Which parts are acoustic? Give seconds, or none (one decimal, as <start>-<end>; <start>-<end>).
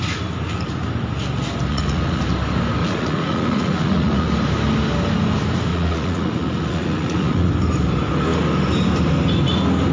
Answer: 0.0-1.7; 2.2-2.8; 4.3-5.7; 7.5-9.9